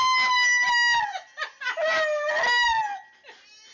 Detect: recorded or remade recorded